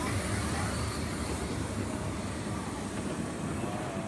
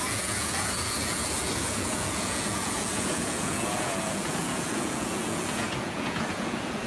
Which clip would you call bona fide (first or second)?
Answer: first